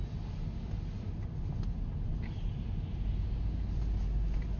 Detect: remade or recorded recorded